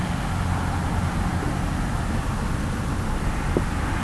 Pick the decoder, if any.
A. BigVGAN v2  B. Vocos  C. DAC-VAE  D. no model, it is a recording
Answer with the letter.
D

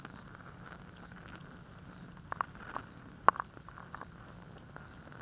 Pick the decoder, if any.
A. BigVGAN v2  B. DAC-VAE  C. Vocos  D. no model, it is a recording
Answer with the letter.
D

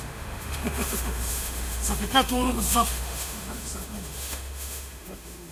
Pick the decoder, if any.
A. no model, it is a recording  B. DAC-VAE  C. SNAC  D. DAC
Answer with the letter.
B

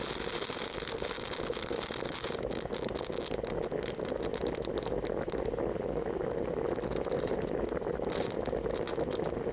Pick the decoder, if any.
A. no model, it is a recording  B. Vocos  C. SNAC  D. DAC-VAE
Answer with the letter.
A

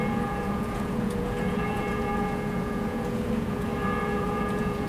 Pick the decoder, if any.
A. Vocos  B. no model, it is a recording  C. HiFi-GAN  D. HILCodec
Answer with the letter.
A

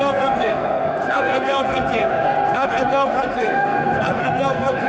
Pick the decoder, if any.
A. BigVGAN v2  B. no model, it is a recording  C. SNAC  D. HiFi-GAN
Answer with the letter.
C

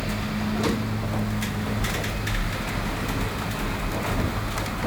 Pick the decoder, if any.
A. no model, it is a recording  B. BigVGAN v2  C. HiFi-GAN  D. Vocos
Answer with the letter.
A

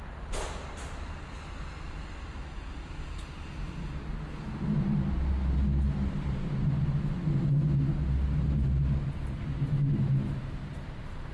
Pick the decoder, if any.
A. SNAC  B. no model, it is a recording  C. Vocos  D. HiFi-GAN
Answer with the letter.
B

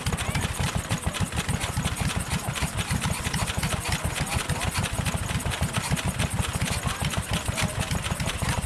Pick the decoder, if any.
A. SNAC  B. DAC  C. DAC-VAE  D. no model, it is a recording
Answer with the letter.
D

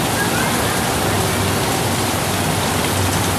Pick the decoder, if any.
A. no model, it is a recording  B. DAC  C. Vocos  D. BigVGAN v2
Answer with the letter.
A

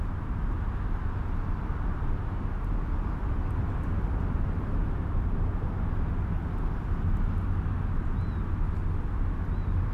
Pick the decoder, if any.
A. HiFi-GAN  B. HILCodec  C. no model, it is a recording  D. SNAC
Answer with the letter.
C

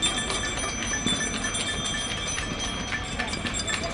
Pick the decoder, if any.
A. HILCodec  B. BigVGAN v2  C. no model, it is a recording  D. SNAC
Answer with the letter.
C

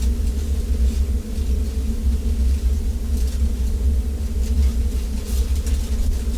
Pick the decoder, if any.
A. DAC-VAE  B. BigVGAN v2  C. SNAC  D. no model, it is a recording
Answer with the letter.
D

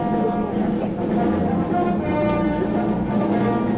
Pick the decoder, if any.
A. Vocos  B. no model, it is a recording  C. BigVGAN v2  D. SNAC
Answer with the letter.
B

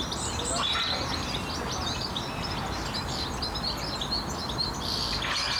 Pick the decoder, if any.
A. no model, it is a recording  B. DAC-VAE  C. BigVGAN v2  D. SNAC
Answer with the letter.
A